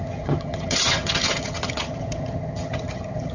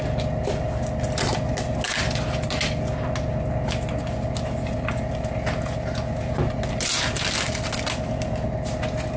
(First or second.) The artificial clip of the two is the first